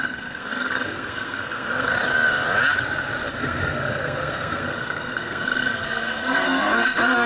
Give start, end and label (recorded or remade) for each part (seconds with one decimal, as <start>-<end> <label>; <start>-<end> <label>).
0.0-1.9 remade; 1.9-3.3 recorded; 3.3-7.3 remade